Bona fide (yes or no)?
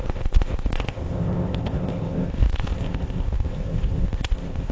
no